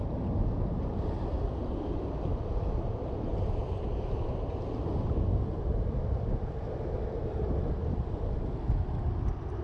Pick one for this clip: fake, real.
real